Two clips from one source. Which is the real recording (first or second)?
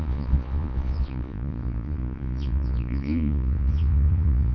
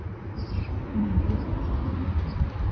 second